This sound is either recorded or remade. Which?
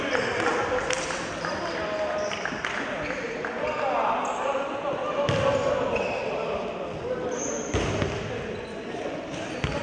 recorded